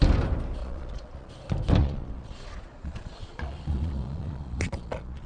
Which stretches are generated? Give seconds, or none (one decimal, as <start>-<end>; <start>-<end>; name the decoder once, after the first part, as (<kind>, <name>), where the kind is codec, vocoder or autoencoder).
0.6-1.3 (vocoder, Vocos); 1.8-5.3